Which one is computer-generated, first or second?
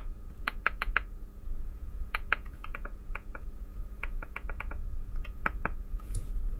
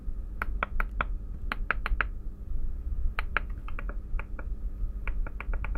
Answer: first